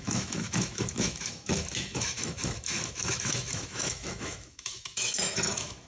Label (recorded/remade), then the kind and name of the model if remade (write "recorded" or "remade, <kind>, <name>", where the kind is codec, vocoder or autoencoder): remade, autoencoder, DAC-VAE